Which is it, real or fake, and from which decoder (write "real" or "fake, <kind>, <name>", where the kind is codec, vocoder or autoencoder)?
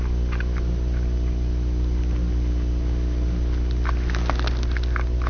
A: real